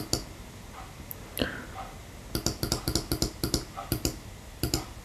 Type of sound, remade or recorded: recorded